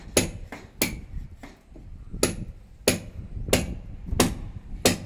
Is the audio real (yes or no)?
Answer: yes